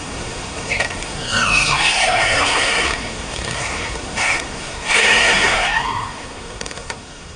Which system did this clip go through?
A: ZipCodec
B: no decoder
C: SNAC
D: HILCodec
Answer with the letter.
C